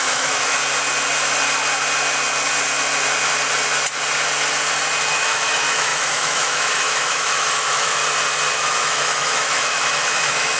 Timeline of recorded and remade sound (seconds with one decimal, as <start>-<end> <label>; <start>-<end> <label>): 0.0-0.6 remade; 0.6-5.1 recorded; 5.1-8.0 remade; 8.0-8.5 recorded; 8.5-10.6 remade